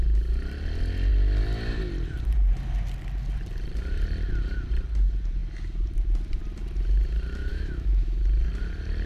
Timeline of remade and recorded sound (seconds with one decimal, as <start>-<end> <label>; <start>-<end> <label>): 0.0-7.5 recorded; 7.5-8.2 remade; 8.2-9.1 recorded